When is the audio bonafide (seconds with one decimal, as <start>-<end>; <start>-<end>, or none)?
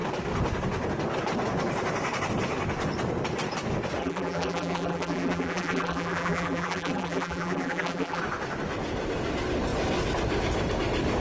0.0-4.0; 8.2-11.2